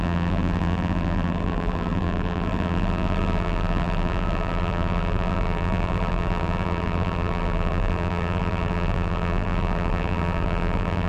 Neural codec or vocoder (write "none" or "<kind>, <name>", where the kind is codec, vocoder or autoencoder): vocoder, BigVGAN v2